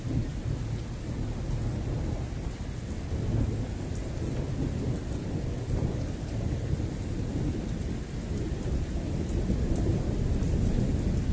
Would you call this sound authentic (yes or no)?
yes